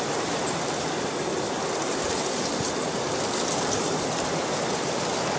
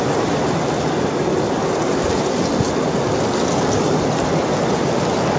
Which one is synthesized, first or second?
first